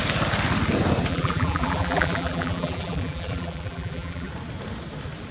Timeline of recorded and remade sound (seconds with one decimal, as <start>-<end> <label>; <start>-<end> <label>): 0.0-1.1 recorded; 1.1-4.3 remade; 4.3-5.3 recorded